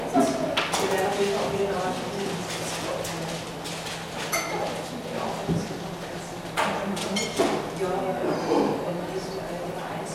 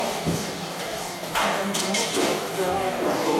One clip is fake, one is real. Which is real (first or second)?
first